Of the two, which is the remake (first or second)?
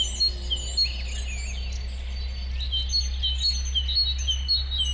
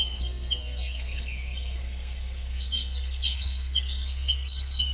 second